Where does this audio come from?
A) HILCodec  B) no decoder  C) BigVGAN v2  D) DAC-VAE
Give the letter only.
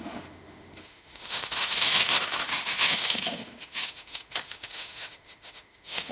D